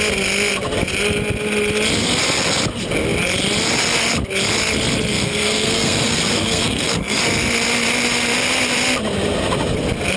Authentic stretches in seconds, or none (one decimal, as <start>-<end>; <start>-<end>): 0.0-5.1; 7.2-10.2